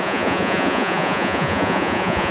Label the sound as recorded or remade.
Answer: remade